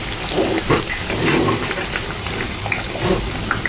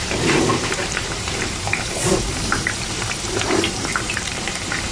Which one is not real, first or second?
second